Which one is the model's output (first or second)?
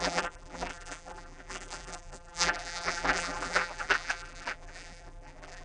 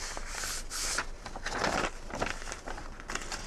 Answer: first